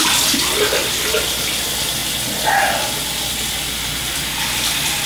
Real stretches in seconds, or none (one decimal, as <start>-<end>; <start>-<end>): 0.0-5.1